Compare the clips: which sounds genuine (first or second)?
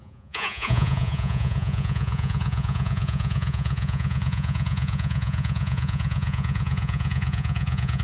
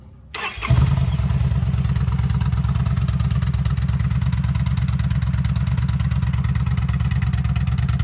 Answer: second